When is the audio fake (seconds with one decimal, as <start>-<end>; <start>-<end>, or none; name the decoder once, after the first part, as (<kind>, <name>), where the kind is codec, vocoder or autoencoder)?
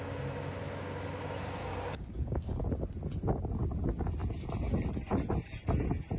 1.6-2.6 (codec, DAC)